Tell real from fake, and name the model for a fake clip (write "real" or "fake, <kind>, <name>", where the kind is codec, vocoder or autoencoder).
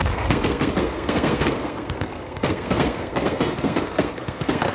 fake, codec, SNAC